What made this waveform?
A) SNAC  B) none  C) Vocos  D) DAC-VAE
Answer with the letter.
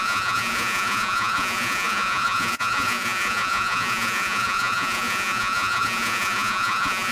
C